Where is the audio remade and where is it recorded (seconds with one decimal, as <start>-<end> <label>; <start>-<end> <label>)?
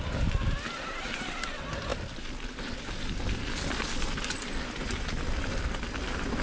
0.0-6.4 recorded